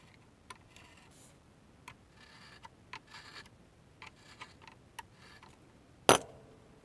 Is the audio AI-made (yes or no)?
no